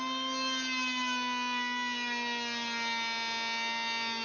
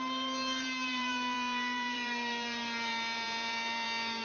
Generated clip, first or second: second